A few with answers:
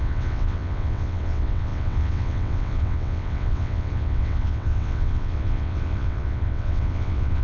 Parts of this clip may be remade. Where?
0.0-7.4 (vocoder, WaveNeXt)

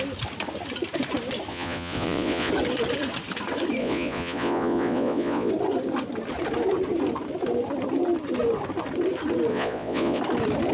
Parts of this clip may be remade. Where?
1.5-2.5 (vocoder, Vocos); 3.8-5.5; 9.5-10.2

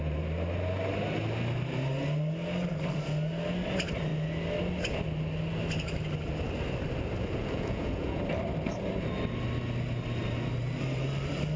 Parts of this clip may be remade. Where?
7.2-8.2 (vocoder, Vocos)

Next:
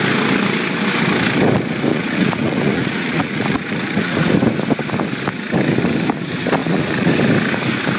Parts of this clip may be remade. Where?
1.9-4.3 (vocoder, Vocos); 6.6-7.1

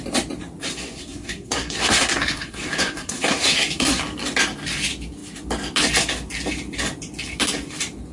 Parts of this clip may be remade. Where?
0.7-4.0 (codec, SNAC)

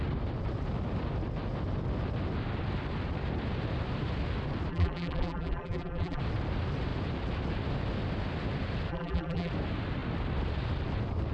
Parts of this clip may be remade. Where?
4.7-6.2 (vocoder, BigVGAN v2); 8.9-9.5

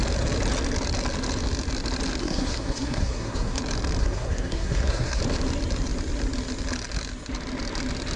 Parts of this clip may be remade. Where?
2.2-3.6 (codec, SNAC); 4.0-5.2

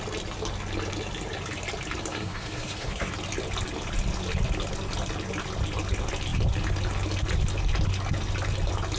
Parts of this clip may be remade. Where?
2.1-3.1 (codec, SNAC)